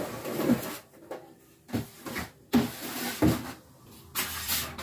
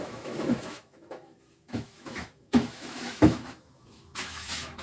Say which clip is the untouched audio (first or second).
first